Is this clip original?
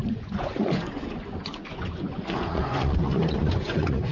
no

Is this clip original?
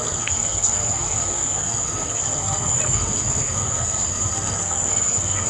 no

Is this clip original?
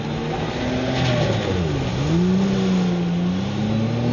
yes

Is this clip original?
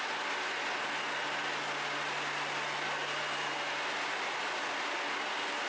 yes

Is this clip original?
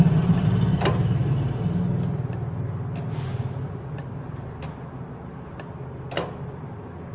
yes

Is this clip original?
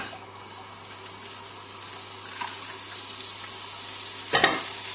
yes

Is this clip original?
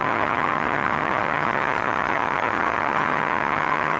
no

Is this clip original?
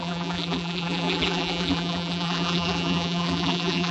no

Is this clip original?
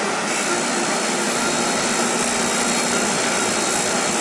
yes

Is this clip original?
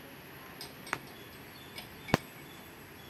yes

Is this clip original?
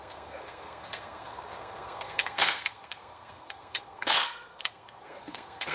no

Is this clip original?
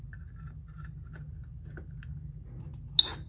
yes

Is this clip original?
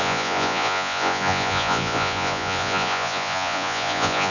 no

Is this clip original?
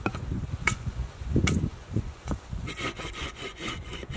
no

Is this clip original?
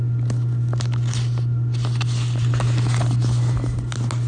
yes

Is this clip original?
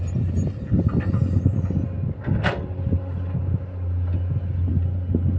yes